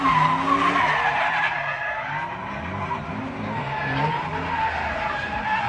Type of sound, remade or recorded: recorded